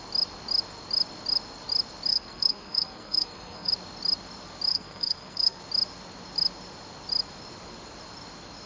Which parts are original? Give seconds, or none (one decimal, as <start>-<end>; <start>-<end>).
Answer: 0.0-2.1; 3.7-4.7; 5.6-8.7